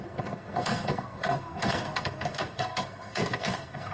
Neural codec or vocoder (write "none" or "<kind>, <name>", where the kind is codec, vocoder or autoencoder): codec, SNAC